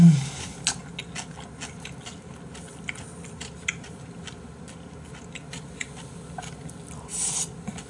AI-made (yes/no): no